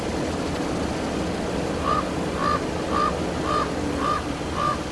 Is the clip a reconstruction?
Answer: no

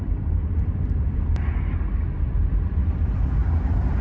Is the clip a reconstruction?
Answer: yes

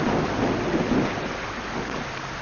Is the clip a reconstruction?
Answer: no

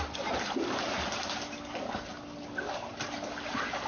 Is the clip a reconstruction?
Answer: no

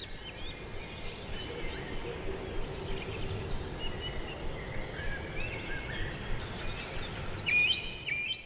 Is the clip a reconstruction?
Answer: no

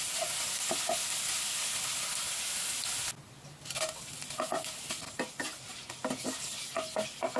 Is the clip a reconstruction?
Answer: no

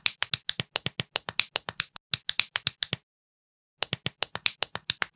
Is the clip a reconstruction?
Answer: no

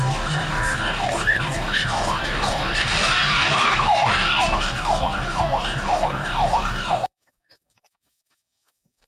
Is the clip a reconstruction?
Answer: yes